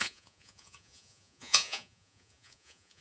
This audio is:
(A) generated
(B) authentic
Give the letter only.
A